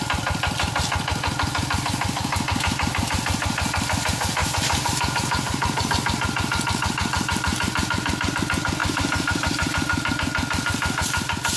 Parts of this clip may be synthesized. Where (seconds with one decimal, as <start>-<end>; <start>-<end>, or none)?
4.4-5.9; 7.5-8.4; 8.8-10.1